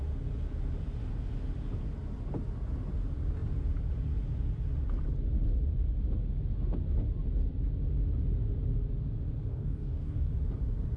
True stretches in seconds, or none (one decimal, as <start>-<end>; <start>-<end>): 0.0-9.5; 10.3-11.0

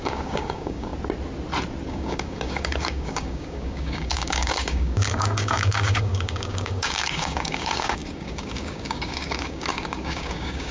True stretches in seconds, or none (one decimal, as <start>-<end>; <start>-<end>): 0.9-1.9